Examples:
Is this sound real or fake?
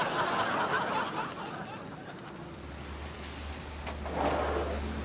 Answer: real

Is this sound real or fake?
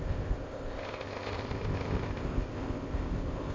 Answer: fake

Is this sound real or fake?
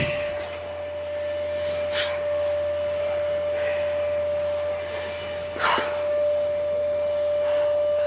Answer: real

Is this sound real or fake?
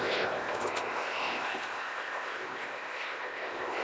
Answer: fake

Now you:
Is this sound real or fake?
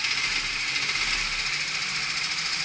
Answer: real